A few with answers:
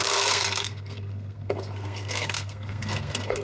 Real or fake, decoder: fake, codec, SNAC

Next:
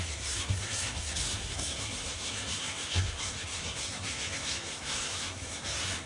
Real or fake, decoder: fake, codec, SNAC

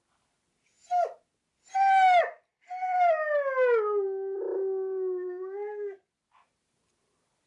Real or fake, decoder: real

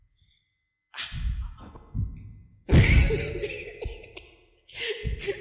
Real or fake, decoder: real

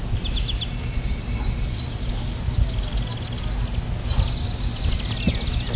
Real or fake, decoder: real